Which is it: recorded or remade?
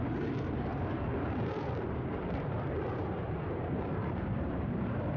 remade